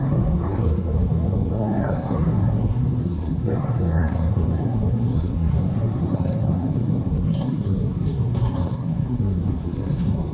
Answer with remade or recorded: remade